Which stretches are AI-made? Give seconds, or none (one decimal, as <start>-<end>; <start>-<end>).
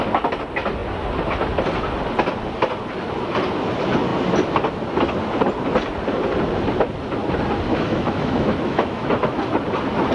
7.7-9.4